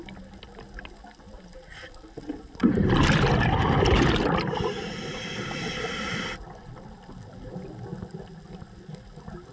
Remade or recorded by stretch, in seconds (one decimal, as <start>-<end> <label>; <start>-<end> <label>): 0.0-9.5 recorded